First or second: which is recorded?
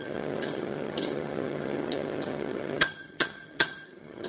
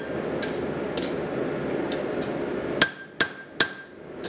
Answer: second